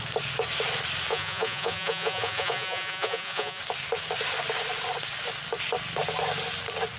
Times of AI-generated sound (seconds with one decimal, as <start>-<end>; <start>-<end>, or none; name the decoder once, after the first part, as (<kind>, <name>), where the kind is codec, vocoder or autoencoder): 1.1-3.6 (vocoder, Vocos)